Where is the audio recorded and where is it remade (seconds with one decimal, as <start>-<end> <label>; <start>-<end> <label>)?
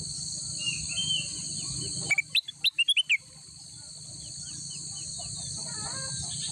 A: 0.0-6.5 recorded